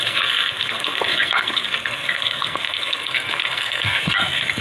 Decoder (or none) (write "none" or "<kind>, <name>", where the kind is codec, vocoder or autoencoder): codec, SNAC